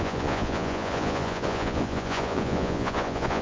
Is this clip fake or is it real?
fake